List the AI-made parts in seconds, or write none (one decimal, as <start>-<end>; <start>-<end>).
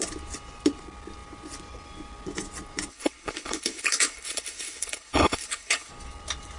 2.9-5.9